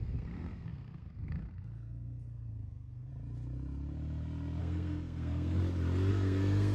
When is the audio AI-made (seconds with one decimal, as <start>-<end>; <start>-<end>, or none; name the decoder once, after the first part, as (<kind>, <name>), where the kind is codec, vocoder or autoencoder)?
0.0-3.1 (codec, SNAC); 4.6-5.6; 6.1-6.7